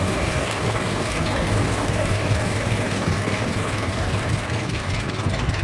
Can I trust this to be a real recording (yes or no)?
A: no